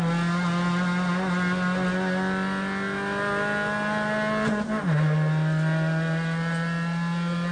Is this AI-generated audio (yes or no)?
no